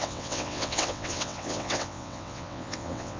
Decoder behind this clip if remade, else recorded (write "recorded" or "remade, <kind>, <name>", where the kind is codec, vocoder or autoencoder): remade, vocoder, WaveNeXt